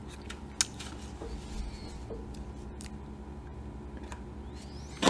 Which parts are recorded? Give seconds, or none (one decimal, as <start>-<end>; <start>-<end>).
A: 0.0-5.1